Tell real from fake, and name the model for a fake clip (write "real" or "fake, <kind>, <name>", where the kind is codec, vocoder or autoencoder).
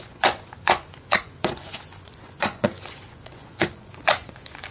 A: fake, vocoder, Vocos